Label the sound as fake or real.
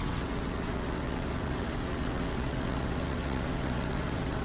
fake